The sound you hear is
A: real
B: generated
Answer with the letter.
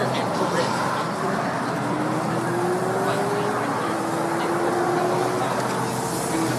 A